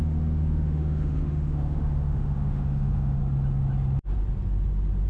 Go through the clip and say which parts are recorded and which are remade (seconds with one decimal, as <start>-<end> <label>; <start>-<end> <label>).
0.0-3.2 remade; 3.2-5.1 recorded